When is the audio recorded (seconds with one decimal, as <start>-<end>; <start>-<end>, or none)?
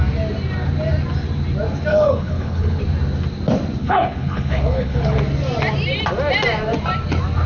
0.0-1.9; 2.8-3.8; 5.2-7.5